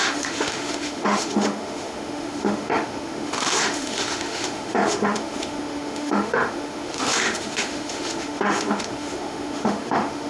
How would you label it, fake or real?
fake